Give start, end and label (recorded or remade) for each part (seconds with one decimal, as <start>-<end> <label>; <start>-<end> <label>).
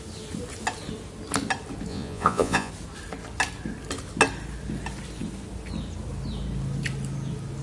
0.0-1.9 recorded; 1.9-2.7 remade; 2.7-7.6 recorded